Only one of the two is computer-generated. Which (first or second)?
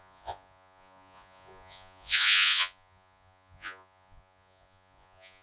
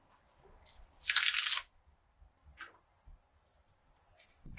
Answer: first